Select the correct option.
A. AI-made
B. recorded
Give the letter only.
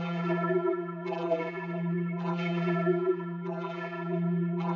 A